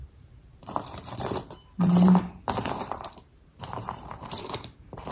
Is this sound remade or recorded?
remade